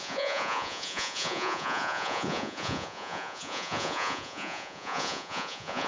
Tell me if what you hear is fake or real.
fake